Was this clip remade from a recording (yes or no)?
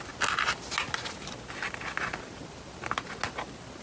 no